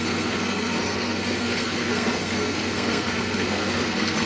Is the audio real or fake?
fake